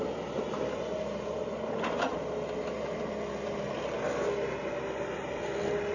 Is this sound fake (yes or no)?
no